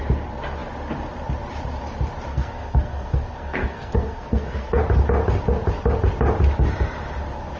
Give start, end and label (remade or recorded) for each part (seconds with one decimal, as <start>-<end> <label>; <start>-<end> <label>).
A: 0.0-2.3 recorded; 2.3-4.8 remade; 4.8-7.6 recorded